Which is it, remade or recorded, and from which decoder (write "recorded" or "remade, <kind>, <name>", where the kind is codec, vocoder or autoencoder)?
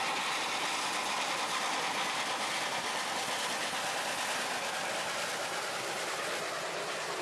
recorded